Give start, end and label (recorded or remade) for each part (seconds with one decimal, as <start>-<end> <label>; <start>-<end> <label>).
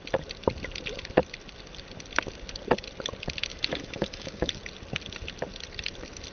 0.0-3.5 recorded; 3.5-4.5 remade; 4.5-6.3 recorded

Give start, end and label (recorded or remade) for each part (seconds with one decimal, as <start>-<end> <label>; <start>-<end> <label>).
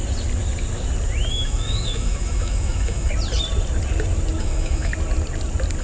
0.0-1.3 recorded; 1.3-3.1 remade; 3.1-4.4 recorded; 4.4-4.9 remade; 4.9-5.8 recorded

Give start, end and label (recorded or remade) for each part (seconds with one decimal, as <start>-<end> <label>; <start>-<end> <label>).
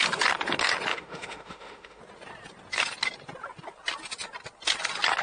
0.0-0.9 recorded; 0.9-2.0 remade; 2.0-5.2 recorded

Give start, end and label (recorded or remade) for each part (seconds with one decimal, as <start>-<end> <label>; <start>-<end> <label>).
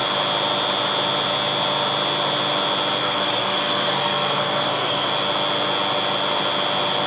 0.0-3.0 recorded; 3.0-5.1 remade; 5.1-7.1 recorded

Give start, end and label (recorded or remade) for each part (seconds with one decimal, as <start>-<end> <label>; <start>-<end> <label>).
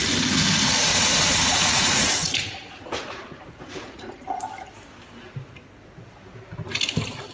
0.0-0.9 recorded; 0.9-4.1 remade; 4.1-7.3 recorded